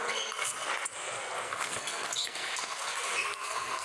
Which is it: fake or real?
fake